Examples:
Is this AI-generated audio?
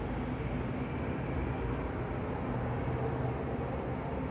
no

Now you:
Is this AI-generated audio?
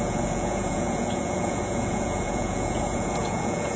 yes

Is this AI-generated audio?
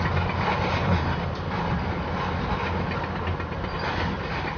no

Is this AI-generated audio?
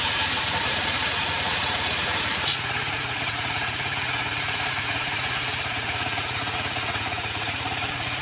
yes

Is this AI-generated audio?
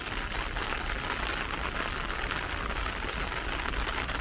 no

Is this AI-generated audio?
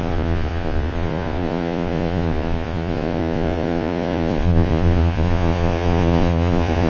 yes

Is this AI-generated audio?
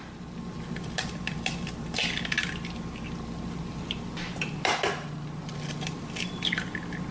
no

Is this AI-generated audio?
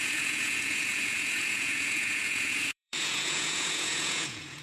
yes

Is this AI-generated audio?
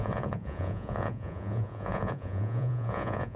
yes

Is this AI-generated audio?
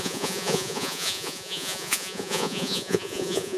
yes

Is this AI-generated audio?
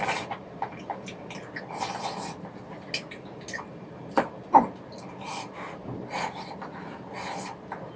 no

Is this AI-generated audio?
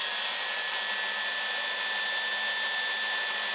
no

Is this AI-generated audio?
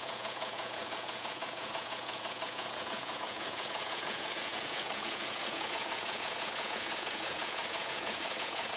yes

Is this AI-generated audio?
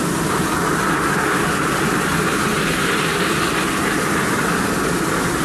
no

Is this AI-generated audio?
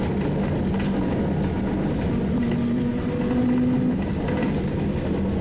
no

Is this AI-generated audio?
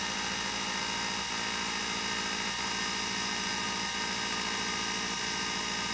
no